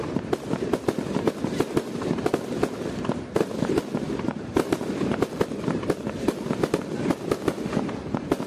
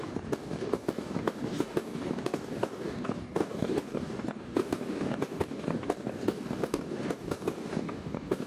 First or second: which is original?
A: first